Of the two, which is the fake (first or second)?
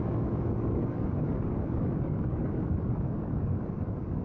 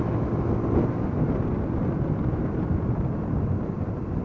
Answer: first